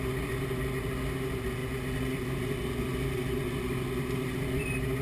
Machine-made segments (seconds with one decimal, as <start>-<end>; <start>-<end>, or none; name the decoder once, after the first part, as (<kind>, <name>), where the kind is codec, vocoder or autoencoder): none